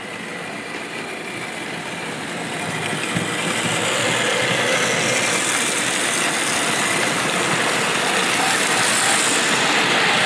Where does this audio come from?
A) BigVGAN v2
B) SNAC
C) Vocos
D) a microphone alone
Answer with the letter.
D